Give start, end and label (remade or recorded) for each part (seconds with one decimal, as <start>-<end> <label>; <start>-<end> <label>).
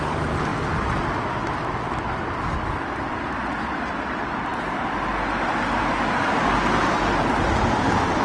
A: 0.0-8.2 recorded